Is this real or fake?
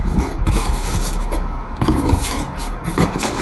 fake